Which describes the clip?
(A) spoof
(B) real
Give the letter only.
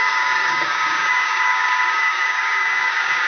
A